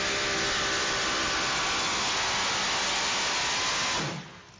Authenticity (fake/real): real